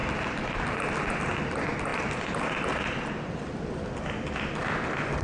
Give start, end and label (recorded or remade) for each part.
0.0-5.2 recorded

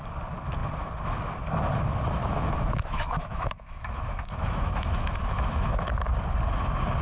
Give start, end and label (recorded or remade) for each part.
0.0-2.2 recorded; 2.2-6.1 remade; 6.1-7.0 recorded

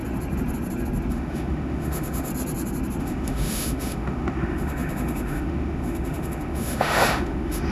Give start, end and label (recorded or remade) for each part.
0.0-1.1 recorded; 1.1-2.3 remade; 2.3-3.0 recorded; 3.0-7.7 remade

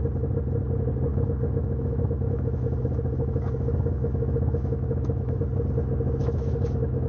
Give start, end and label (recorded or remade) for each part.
0.0-1.1 recorded; 1.1-5.4 remade; 5.4-6.2 recorded; 6.2-7.1 remade